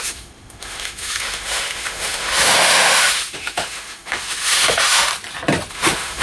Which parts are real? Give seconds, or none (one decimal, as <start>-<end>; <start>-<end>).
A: 5.1-5.7